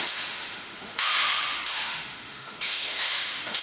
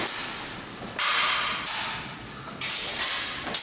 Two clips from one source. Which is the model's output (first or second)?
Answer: first